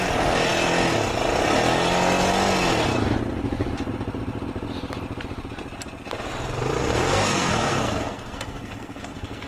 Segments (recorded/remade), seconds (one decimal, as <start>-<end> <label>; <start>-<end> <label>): 0.0-6.8 recorded; 6.8-9.5 remade